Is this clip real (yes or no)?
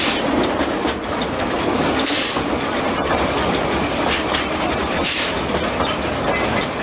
yes